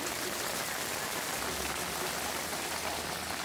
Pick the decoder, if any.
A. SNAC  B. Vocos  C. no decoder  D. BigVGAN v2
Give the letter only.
C